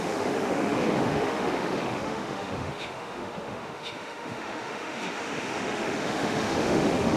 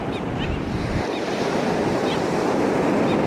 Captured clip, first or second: second